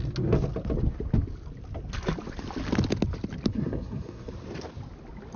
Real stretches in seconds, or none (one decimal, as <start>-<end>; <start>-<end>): 0.0-3.5; 4.3-5.4